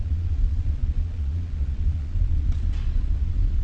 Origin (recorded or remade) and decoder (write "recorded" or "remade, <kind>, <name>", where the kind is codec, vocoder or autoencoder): remade, vocoder, Vocos